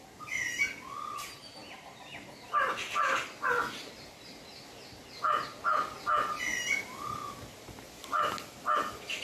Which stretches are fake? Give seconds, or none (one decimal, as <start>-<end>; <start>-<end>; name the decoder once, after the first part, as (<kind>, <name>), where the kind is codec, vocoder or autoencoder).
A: none